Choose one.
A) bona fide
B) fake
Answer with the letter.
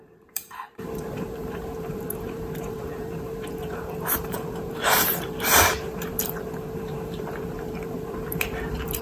B